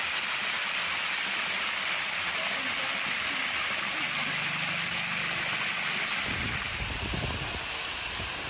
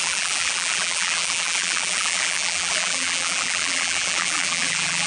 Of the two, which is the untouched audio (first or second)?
first